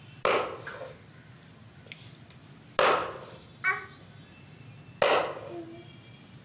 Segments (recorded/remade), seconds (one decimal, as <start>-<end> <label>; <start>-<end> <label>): 0.0-6.4 recorded